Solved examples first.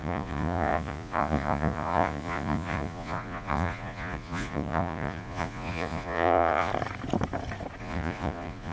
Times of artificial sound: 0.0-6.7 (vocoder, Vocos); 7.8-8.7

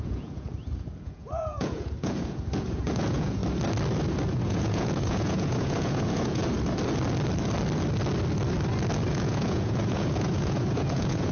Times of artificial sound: 0.0-3.4 (vocoder, Vocos); 4.3-6.4; 9.1-11.3

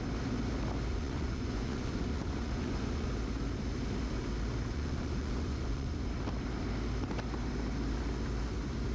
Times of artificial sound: 0.9-3.1 (vocoder, Vocos); 4.7-6.2